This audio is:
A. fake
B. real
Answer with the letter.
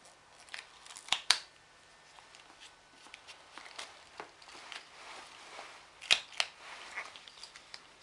B